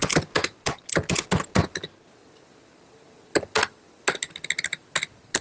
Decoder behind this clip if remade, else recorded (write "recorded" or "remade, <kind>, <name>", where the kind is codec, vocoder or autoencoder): recorded